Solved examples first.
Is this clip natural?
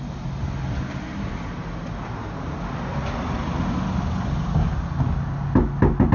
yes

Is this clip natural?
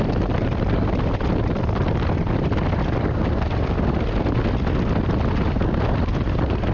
yes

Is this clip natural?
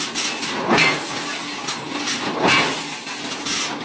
yes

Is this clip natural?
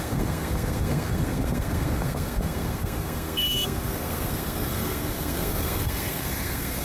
no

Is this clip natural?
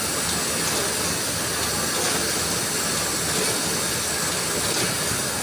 yes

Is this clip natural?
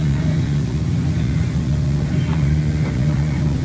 no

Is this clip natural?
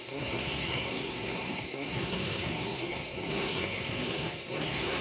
no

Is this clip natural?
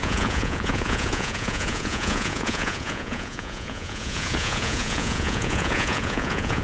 no